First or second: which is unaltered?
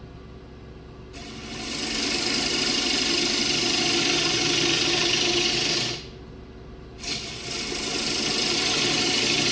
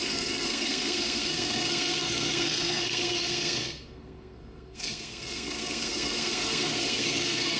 first